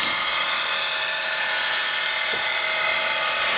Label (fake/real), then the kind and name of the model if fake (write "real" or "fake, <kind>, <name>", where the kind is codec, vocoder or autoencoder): real